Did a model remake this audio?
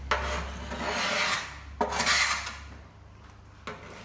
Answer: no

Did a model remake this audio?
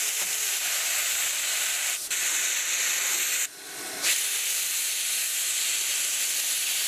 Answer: no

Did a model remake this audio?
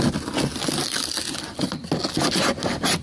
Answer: no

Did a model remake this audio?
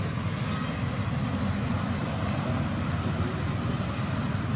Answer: no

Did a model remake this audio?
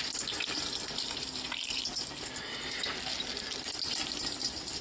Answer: no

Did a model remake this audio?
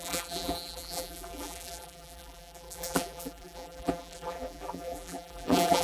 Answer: yes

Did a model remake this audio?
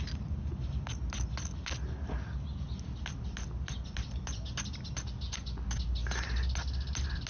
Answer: no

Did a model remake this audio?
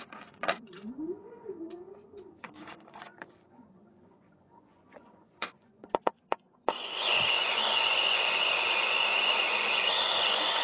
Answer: yes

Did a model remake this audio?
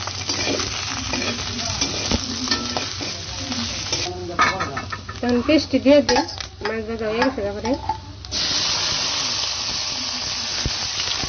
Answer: no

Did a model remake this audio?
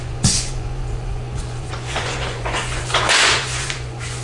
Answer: yes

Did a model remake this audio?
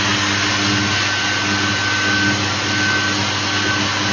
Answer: no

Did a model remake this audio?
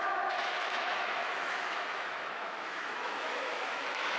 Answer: yes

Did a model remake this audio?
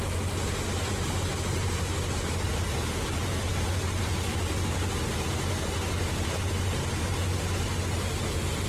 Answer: no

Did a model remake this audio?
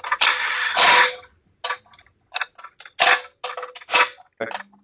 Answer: no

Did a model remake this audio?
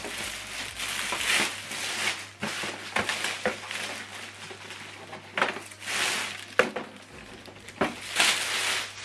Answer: no